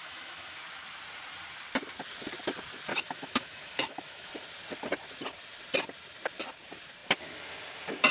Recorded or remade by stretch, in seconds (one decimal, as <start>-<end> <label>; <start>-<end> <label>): 0.0-0.6 remade; 0.6-2.9 recorded; 2.9-4.3 remade; 4.3-8.1 recorded